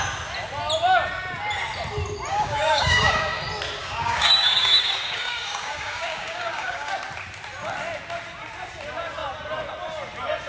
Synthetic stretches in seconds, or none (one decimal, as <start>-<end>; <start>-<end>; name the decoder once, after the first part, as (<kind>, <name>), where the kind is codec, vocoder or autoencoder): 2.3-3.4 (codec, DAC); 3.8-6.9